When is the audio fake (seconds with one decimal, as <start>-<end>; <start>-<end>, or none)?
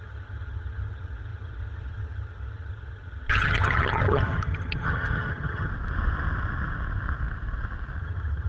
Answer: 0.0-5.7; 8.0-8.5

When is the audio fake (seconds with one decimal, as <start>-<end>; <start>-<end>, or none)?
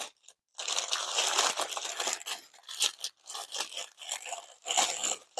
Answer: none